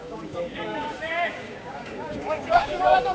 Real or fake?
fake